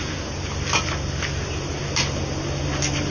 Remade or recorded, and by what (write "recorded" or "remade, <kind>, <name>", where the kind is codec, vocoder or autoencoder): recorded